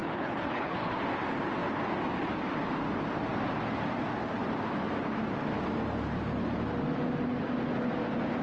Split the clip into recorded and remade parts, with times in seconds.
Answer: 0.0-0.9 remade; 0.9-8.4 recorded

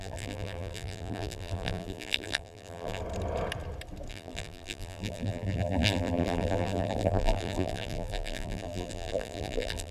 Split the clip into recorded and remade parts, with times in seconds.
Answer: 0.0-3.0 remade; 3.0-4.1 recorded; 4.1-9.9 remade

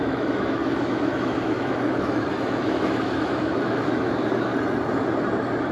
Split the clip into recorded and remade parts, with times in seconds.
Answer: 0.0-4.5 remade; 4.5-5.7 recorded

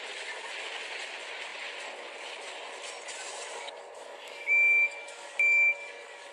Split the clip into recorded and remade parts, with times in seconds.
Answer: 0.0-3.5 recorded; 3.5-6.3 remade

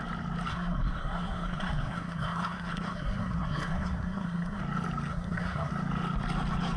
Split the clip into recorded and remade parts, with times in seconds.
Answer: 0.0-0.5 recorded; 0.5-4.6 remade; 4.6-5.1 recorded; 5.1-5.7 remade; 5.7-6.8 recorded

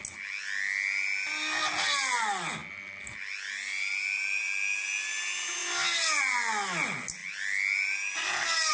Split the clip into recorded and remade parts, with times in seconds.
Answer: 0.0-8.7 recorded

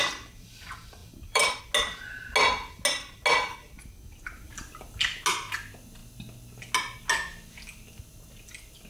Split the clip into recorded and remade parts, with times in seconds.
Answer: 0.0-1.0 recorded; 1.0-1.6 remade; 1.6-8.9 recorded

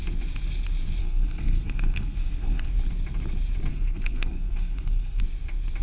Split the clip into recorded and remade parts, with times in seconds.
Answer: 0.0-1.0 recorded; 1.0-2.7 remade; 2.7-3.7 recorded; 3.7-5.2 remade; 5.2-5.8 recorded